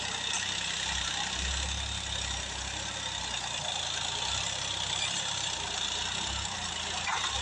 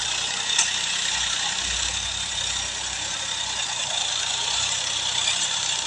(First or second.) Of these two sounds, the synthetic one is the second